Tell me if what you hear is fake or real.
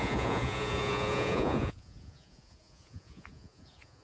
fake